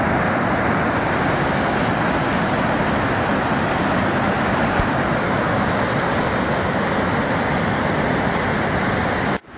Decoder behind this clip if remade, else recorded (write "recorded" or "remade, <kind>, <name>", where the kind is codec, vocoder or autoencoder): remade, vocoder, BigVGAN v2